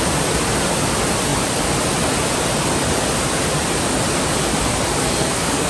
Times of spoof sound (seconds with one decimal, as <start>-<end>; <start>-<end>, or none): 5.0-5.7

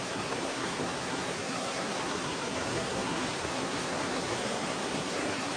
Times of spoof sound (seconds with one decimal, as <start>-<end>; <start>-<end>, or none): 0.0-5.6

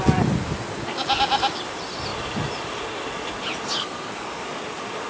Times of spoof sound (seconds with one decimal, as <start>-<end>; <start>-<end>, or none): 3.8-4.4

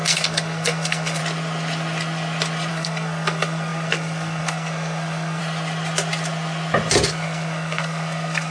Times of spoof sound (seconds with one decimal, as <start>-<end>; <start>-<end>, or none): 0.0-1.2; 2.7-5.4; 7.1-8.5

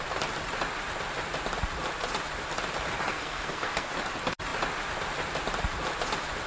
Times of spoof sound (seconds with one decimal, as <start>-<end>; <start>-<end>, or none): 3.1-3.9